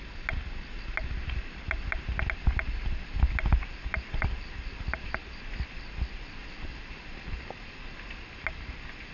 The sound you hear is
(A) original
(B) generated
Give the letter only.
A